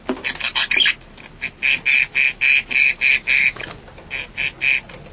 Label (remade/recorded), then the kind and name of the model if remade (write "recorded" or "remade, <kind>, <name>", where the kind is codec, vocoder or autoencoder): recorded